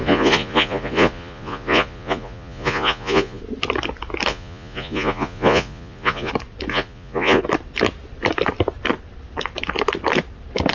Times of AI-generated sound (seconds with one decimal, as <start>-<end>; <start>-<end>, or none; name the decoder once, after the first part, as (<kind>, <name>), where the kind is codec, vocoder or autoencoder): 0.0-3.4 (vocoder, Vocos); 4.3-6.3; 6.7-7.4